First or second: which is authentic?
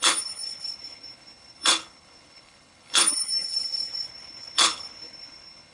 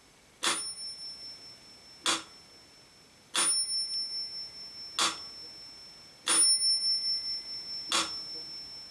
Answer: second